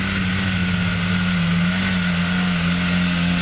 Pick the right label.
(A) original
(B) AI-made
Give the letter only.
A